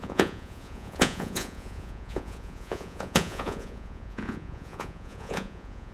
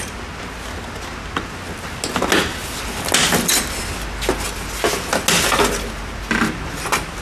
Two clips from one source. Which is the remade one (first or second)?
first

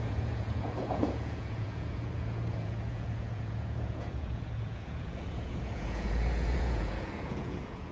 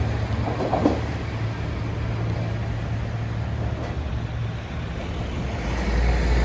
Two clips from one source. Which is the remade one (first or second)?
first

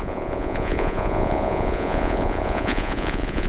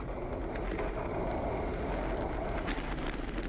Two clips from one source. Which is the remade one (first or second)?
first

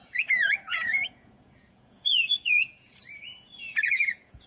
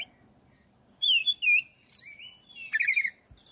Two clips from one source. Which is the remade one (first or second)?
first